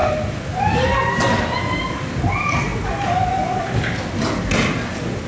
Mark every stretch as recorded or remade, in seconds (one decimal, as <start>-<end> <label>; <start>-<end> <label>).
0.0-5.3 recorded